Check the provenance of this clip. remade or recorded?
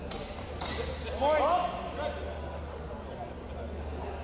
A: recorded